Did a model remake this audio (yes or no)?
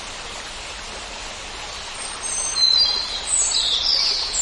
no